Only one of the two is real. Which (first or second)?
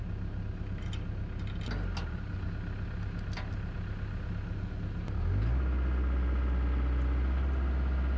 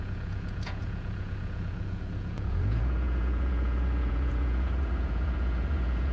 first